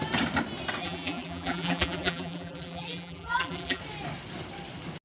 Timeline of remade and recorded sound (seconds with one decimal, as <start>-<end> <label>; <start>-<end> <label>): 0.0-0.8 recorded; 0.8-3.8 remade; 3.8-5.0 recorded